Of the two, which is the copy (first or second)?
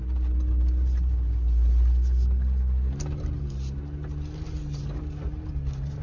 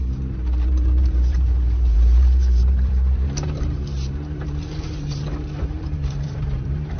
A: second